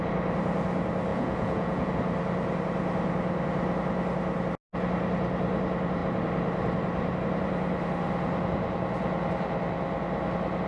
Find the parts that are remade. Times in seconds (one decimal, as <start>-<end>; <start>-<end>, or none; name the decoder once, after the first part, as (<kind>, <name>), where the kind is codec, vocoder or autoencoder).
1.1-1.9 (vocoder, Vocos)